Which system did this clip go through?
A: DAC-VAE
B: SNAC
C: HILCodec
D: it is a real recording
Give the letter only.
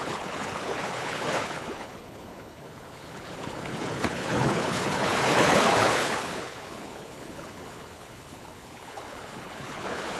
C